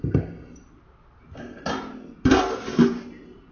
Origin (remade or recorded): recorded